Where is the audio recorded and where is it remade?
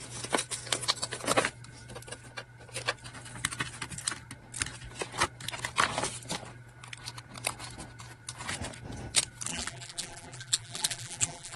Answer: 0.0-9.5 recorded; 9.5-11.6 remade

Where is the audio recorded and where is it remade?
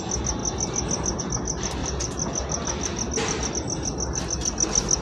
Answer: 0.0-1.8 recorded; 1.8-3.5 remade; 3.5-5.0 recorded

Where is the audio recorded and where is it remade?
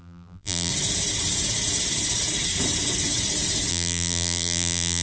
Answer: 0.0-0.7 remade; 0.7-3.7 recorded; 3.7-5.0 remade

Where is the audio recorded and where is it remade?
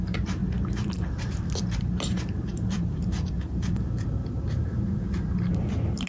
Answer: 0.0-0.4 remade; 0.4-1.1 recorded; 1.1-6.1 remade